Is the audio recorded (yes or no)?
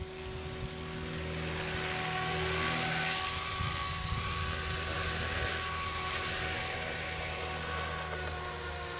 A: yes